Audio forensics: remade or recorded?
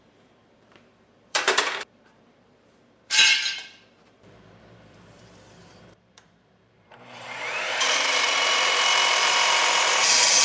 remade